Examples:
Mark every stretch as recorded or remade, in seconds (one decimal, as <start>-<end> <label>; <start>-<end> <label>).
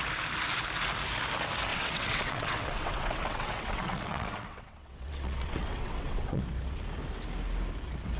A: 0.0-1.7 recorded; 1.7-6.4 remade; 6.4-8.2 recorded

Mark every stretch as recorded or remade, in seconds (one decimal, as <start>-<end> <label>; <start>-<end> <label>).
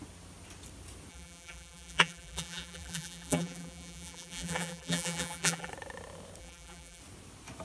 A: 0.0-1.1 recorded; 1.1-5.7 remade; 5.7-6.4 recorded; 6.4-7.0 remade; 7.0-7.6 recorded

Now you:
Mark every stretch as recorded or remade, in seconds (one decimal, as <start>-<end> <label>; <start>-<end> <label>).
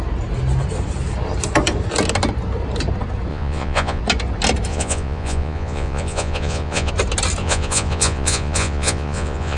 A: 0.0-3.3 recorded; 3.3-4.0 remade; 4.0-4.7 recorded; 4.7-6.9 remade; 6.9-7.4 recorded; 7.4-9.6 remade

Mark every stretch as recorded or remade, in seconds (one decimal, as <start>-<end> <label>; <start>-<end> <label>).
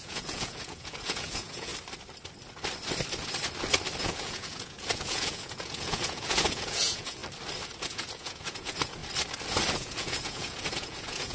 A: 0.0-1.7 remade; 1.7-4.0 recorded; 4.0-7.2 remade; 7.2-7.8 recorded; 7.8-9.0 remade; 9.0-9.7 recorded; 9.7-11.3 remade